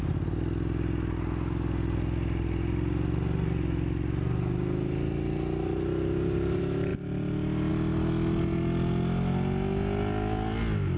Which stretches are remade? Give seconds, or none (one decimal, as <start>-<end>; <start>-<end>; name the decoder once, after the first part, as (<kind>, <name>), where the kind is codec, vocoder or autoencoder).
none